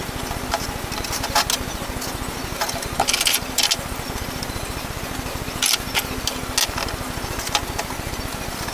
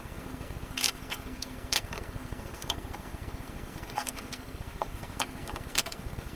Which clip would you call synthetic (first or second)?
second